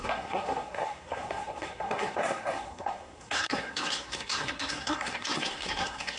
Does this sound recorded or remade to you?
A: remade